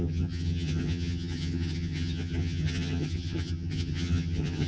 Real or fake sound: fake